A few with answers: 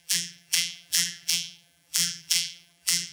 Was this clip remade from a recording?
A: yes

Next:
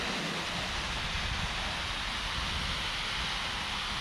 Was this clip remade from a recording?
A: no